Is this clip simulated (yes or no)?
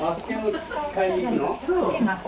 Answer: yes